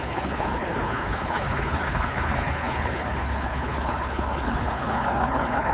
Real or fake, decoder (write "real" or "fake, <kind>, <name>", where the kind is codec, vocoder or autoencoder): fake, codec, HILCodec